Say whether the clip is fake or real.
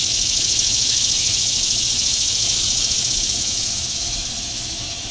fake